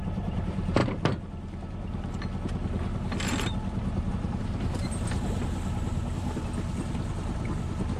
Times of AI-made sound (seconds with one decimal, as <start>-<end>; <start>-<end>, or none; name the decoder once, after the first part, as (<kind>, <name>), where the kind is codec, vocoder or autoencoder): 0.0-0.8 (vocoder, BigVGAN v2); 4.1-6.4